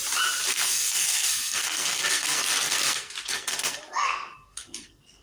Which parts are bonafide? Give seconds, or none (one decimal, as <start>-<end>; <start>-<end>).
0.0-0.5